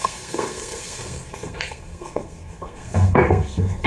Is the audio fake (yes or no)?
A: yes